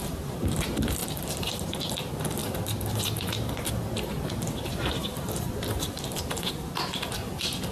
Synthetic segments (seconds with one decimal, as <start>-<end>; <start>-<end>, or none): 0.0-0.6; 1.0-1.9; 2.4-6.5